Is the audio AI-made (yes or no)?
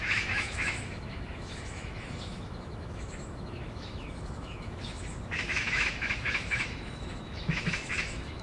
yes